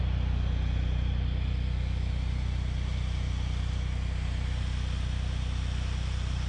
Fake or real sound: real